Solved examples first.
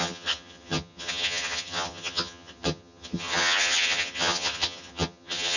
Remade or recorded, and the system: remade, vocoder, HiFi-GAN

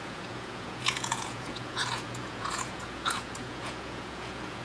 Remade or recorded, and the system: remade, vocoder, Vocos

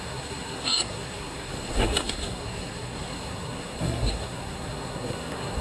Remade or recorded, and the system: remade, codec, SNAC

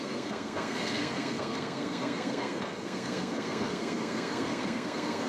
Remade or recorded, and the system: remade, codec, SNAC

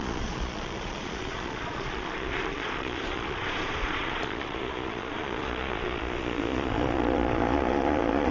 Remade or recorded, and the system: remade, vocoder, Vocos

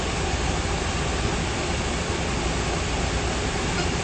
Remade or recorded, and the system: recorded